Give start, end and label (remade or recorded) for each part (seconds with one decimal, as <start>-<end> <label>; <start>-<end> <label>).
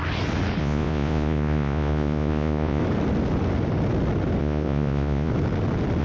0.0-0.6 recorded; 0.6-2.8 remade; 2.8-4.4 recorded; 4.4-5.3 remade; 5.3-6.0 recorded